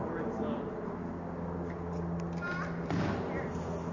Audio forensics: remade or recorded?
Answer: recorded